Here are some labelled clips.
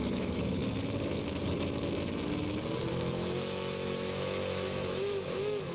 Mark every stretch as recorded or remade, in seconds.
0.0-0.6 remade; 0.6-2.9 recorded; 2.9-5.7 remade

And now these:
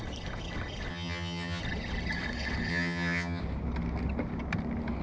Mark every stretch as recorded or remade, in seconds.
0.0-0.9 recorded; 0.9-1.6 remade; 1.6-2.7 recorded; 2.7-3.4 remade; 3.4-5.0 recorded

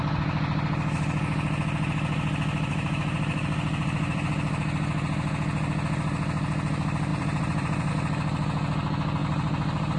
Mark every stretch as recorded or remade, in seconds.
0.0-2.7 recorded; 2.7-4.3 remade; 4.3-7.1 recorded; 7.1-7.9 remade; 7.9-9.2 recorded; 9.2-10.0 remade